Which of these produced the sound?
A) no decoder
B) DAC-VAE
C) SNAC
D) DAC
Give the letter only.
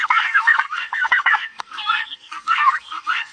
C